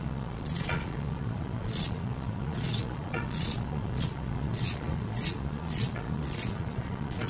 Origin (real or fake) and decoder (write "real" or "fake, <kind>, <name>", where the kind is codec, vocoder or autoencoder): fake, vocoder, Vocos